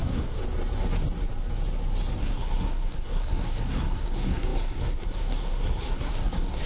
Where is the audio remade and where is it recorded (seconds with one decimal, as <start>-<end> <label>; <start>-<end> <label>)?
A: 0.0-0.4 remade; 0.4-2.2 recorded; 2.2-6.7 remade